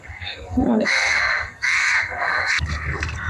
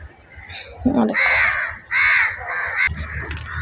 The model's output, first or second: first